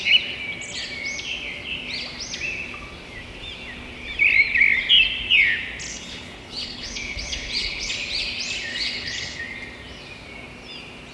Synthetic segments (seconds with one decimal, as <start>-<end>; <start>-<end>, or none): 5.9-7.9; 8.7-9.4